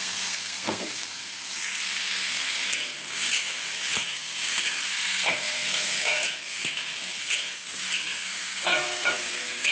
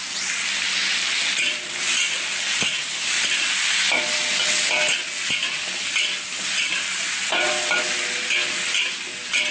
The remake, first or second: first